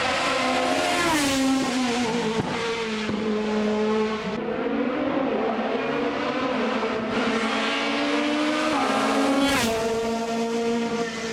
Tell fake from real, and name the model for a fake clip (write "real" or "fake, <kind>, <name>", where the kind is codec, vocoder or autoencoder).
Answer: real